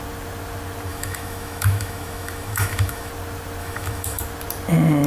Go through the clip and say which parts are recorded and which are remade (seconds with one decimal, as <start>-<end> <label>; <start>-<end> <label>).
0.0-0.9 recorded; 0.9-3.1 remade; 3.1-3.6 recorded; 3.6-4.2 remade; 4.2-5.1 recorded